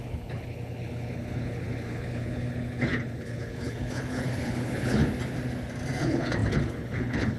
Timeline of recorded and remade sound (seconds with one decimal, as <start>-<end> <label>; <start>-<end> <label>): 0.0-5.0 remade; 5.0-6.0 recorded; 6.0-7.4 remade